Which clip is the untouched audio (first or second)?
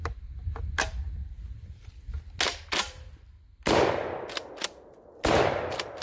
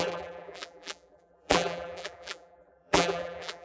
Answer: first